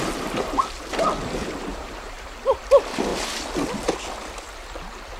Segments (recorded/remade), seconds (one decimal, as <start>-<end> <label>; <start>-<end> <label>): 0.0-1.7 recorded; 1.7-2.6 remade; 2.6-5.2 recorded